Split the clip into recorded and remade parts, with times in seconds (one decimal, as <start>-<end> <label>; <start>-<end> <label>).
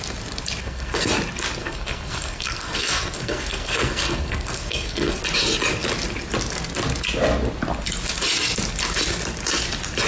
0.0-0.6 recorded; 0.6-1.1 remade; 1.1-1.6 recorded; 1.6-5.2 remade; 5.2-10.1 recorded